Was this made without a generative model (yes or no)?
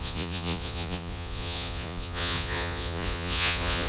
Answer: no